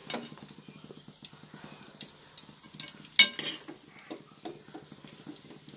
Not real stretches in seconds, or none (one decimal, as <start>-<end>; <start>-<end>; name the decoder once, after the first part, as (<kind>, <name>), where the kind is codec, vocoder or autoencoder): none

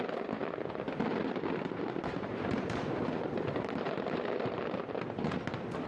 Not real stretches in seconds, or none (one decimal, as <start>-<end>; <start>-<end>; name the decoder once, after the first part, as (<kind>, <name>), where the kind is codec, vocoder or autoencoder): 1.1-4.6 (vocoder, BigVGAN v2)